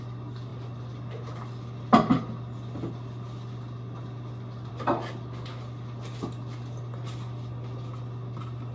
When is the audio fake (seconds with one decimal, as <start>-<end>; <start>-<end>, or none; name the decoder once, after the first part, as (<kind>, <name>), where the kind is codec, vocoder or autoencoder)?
none

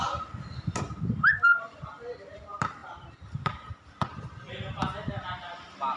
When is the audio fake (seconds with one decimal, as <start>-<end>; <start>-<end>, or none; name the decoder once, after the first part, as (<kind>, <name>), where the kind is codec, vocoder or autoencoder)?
none

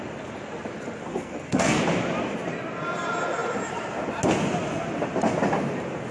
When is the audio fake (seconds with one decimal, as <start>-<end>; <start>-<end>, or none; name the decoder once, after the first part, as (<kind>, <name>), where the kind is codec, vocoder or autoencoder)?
1.1-1.8 (codec, SNAC)

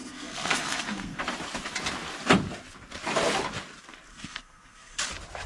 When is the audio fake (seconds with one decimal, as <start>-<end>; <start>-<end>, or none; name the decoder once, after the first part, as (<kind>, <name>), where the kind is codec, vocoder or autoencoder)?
0.0-1.2 (codec, SNAC); 4.1-5.0

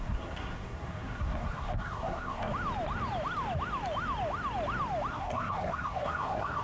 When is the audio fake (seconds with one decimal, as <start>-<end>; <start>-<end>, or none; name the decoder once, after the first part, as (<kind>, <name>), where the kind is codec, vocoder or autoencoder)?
0.0-2.5 (codec, SNAC); 5.1-6.6

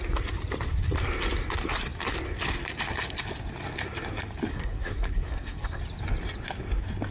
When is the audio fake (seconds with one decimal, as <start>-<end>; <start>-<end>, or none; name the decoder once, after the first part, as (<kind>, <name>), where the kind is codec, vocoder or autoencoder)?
4.5-5.8 (codec, SNAC)